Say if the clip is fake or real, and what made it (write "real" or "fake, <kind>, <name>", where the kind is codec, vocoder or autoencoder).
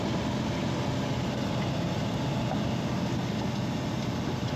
real